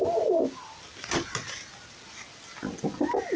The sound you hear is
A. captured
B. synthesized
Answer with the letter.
A